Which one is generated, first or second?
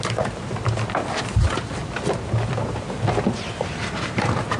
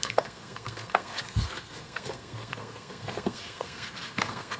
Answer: second